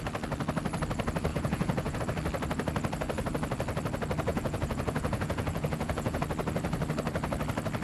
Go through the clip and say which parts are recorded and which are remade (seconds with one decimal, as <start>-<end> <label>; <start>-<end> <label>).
0.0-1.3 recorded; 1.3-2.0 remade; 2.0-4.3 recorded; 4.3-6.2 remade; 6.2-7.8 recorded